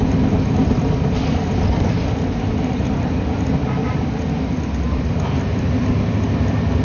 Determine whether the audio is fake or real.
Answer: fake